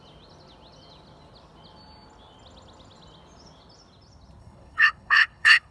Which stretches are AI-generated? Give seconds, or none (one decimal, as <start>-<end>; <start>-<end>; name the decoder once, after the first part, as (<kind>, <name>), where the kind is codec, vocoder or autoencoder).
4.4-5.7 (codec, HILCodec)